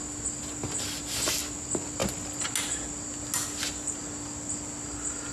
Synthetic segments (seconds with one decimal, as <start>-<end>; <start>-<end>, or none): none